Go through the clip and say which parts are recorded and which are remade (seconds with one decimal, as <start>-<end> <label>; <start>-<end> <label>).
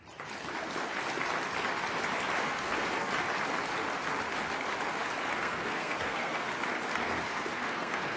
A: 0.0-2.4 recorded; 2.4-3.1 remade; 3.1-5.3 recorded; 5.3-6.5 remade; 6.5-7.0 recorded; 7.0-8.2 remade